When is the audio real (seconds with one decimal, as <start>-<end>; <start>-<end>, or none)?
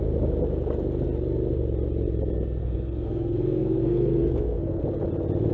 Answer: 0.0-2.6; 4.8-5.5